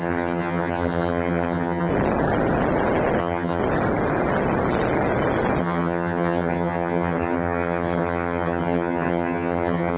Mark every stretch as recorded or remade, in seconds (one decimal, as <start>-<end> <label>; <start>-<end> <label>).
0.0-1.9 remade; 1.9-3.2 recorded; 3.2-3.6 remade; 3.6-5.6 recorded; 5.6-10.0 remade